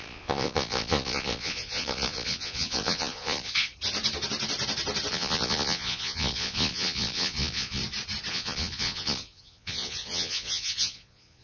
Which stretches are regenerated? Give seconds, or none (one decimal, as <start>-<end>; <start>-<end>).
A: 0.0-3.7; 5.1-7.8; 8.3-11.4